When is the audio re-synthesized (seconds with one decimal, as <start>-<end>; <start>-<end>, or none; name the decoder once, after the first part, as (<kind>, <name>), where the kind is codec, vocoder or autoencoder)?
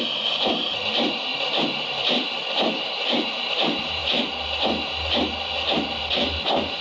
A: 0.0-4.0 (vocoder, BigVGAN v2); 6.1-6.8